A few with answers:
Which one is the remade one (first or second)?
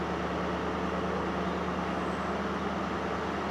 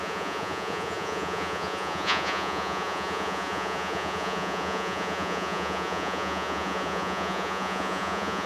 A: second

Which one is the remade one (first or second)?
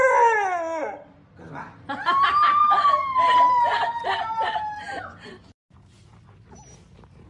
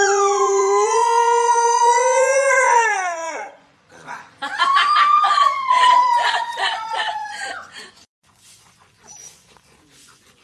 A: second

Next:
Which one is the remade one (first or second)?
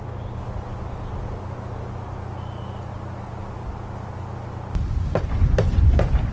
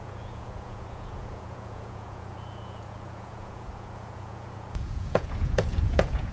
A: second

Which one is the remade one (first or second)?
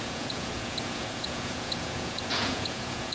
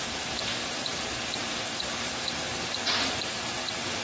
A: first